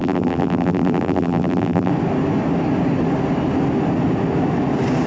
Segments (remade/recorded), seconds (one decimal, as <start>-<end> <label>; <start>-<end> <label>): 0.0-1.9 remade; 1.9-5.1 recorded